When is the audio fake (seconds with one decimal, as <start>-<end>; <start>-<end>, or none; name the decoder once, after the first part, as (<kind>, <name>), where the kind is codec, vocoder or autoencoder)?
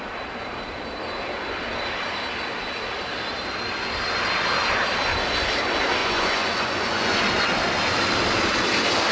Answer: 6.0-7.2 (vocoder, Vocos)